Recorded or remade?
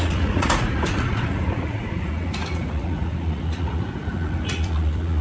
remade